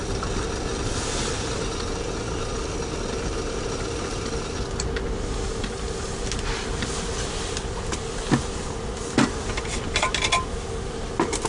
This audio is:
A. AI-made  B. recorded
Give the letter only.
B